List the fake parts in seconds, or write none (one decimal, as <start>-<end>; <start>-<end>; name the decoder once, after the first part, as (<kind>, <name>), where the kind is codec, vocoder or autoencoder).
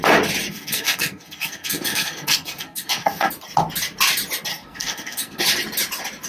0.5-3.3 (codec, SNAC); 4.5-5.4